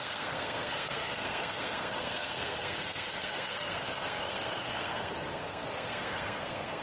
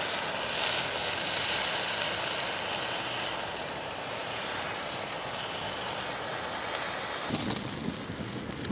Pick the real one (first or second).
second